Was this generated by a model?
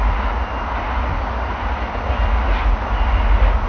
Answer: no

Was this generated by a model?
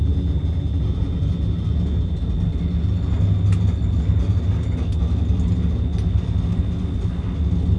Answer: no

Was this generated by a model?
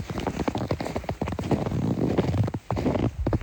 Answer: no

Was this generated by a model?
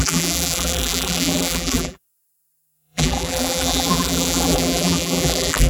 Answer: yes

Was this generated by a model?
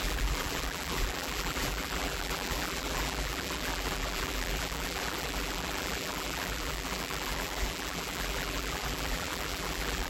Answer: yes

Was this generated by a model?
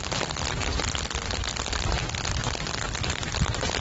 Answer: no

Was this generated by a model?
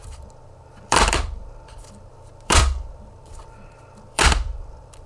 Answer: yes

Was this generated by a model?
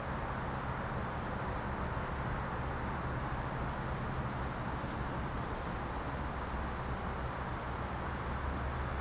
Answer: no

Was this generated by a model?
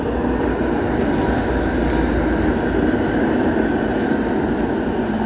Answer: no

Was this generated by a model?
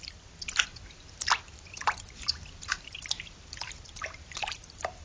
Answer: yes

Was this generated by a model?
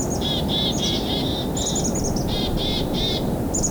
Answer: no